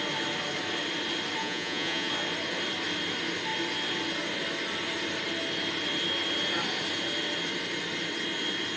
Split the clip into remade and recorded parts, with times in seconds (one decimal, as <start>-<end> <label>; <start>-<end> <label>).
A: 0.0-1.4 recorded; 1.4-2.1 remade; 2.1-8.8 recorded